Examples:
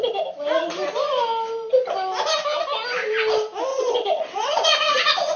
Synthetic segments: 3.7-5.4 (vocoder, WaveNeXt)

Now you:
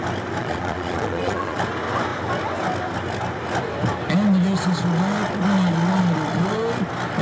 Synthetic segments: 0.4-1.6 (vocoder, Vocos)